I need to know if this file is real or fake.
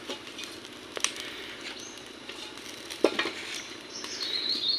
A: real